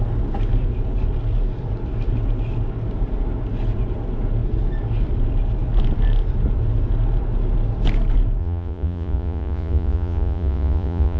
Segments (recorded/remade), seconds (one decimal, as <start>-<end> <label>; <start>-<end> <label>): 0.0-8.4 recorded; 8.4-11.2 remade